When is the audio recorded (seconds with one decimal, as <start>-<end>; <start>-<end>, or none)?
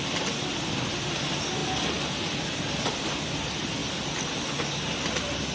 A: 0.0-5.5